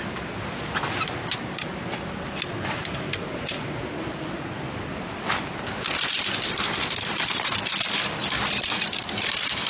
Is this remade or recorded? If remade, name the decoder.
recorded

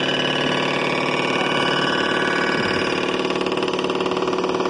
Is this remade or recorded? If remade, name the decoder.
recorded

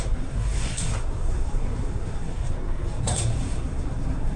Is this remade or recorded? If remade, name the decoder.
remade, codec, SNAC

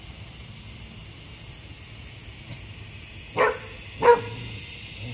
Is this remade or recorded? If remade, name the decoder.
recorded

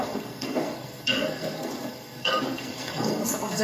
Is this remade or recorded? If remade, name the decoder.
remade, codec, SNAC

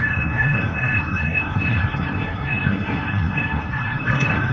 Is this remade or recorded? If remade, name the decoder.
remade, codec, SNAC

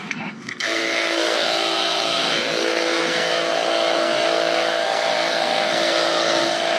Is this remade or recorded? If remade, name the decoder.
remade, codec, SNAC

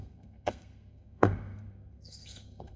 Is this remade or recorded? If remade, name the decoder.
remade, codec, SNAC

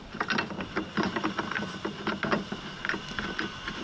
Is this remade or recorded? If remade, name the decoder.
recorded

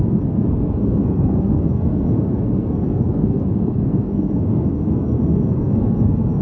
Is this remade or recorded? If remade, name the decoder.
remade, codec, SNAC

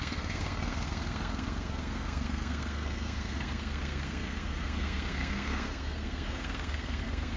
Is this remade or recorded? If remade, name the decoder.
remade, codec, SNAC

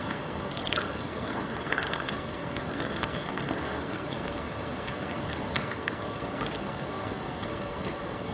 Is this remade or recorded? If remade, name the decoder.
remade, codec, SNAC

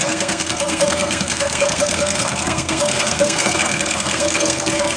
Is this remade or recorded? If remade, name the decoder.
remade, codec, SNAC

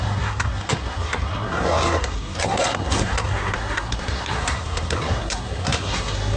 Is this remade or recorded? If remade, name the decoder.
remade, codec, SNAC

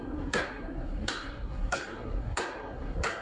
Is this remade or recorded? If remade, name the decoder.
remade, codec, SNAC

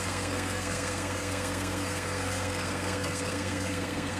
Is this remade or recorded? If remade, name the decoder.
remade, codec, SNAC